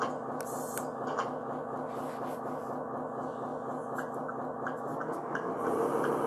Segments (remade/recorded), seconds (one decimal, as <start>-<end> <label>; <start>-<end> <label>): 0.0-4.9 recorded; 4.9-5.5 remade; 5.5-6.3 recorded

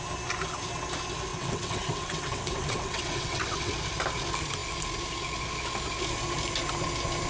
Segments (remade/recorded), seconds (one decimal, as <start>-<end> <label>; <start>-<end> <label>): 0.0-1.3 recorded; 1.3-3.7 remade; 3.7-7.3 recorded